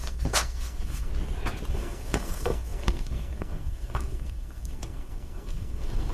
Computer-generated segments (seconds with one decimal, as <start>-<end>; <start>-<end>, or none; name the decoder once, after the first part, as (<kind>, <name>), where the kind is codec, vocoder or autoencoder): 0.0-1.1 (codec, SNAC); 1.7-6.1